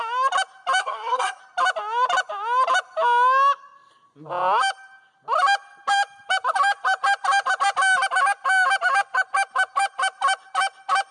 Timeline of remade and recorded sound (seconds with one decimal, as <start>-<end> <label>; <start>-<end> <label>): 0.0-0.8 recorded; 0.8-1.4 remade; 1.4-11.1 recorded